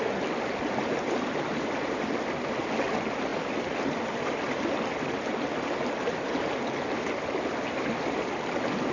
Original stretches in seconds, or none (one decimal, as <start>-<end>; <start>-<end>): 0.0-8.9